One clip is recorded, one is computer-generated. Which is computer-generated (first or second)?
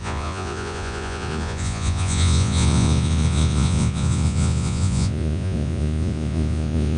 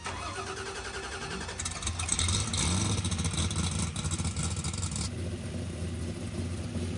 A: first